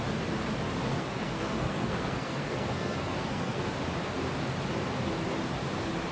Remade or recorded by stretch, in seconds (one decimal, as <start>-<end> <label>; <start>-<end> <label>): 0.0-0.9 recorded; 0.9-3.6 remade; 3.6-6.1 recorded